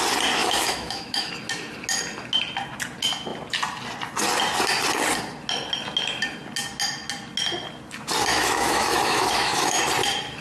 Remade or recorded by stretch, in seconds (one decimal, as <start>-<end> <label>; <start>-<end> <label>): 0.0-0.4 recorded; 0.4-1.3 remade; 1.3-8.3 recorded; 8.3-9.8 remade; 9.8-10.4 recorded